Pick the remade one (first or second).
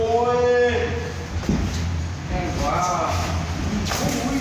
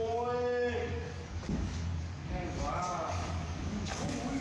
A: second